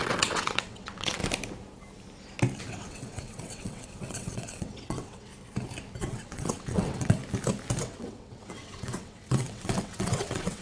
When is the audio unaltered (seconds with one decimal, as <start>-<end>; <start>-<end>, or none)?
1.2-2.6; 5.3-6.0; 7.2-7.8